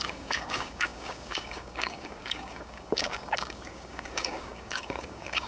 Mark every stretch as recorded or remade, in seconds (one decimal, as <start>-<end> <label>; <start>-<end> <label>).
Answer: 0.0-5.5 remade